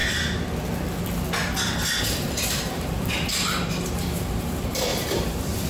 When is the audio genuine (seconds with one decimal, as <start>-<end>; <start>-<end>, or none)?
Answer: 0.0-2.0